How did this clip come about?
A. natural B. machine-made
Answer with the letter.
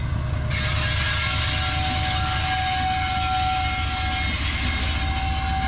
A